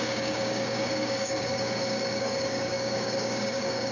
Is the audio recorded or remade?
remade